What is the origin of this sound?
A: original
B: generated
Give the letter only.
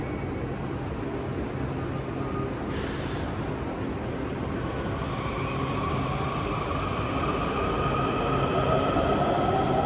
A